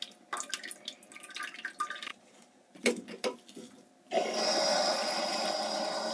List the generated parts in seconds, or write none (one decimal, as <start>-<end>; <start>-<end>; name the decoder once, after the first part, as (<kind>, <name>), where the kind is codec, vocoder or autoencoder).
2.1-2.9 (vocoder, Vocos); 4.7-5.4